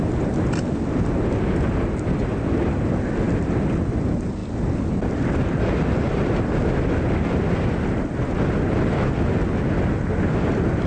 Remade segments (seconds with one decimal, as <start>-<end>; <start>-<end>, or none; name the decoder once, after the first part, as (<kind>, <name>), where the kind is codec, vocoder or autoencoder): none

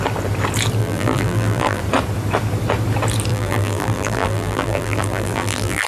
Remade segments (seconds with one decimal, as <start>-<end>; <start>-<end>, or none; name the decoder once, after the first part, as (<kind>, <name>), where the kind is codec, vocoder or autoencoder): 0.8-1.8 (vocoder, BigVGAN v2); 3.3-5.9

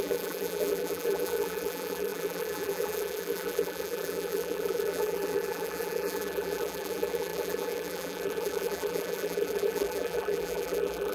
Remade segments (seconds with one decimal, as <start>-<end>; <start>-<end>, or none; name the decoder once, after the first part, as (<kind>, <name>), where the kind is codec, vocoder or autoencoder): 0.0-11.1 (vocoder, BigVGAN v2)

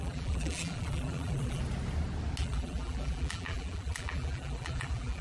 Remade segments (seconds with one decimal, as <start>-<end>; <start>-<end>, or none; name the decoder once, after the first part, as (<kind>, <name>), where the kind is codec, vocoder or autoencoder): 0.0-1.6 (vocoder, BigVGAN v2); 2.4-5.2